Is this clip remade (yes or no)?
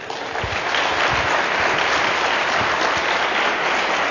no